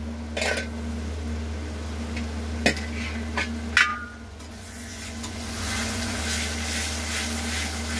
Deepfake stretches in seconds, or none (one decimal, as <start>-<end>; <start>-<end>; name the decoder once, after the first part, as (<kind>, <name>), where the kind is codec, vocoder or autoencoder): 3.9-6.2 (vocoder, Vocos)